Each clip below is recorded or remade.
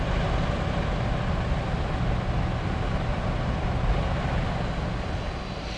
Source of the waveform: recorded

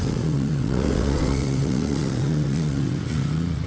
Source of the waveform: remade